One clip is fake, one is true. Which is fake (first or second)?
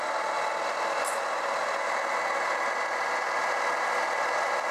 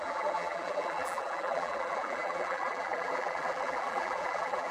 second